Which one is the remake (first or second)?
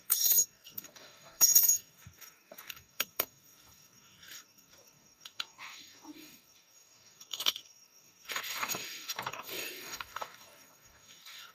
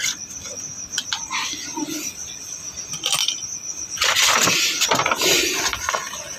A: first